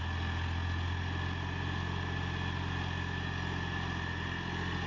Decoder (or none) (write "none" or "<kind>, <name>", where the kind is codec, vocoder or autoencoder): none